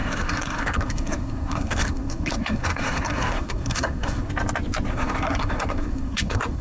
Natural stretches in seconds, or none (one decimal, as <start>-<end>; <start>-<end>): 4.3-4.9